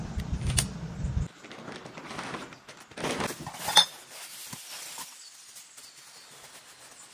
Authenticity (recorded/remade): recorded